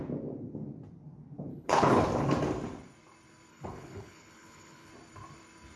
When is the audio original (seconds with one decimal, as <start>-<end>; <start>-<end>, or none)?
0.0-1.5; 2.0-3.5; 4.9-5.8